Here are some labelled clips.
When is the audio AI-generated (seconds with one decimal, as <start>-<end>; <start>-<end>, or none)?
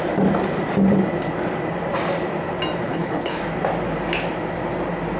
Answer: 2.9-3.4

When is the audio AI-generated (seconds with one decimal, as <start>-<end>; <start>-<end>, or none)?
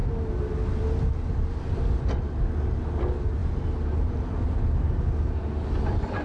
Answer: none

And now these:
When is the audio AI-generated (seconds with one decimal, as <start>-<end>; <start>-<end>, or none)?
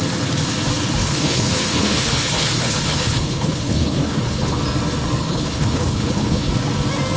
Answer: 1.0-4.6; 5.2-6.5